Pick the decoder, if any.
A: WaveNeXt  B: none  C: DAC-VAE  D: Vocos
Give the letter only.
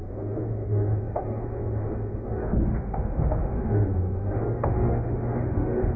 C